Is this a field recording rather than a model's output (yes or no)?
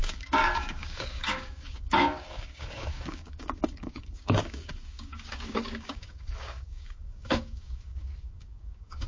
no